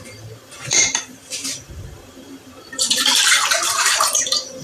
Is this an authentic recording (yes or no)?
no